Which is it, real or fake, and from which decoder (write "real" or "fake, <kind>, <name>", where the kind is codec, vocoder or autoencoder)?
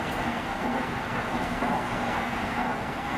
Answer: fake, codec, SNAC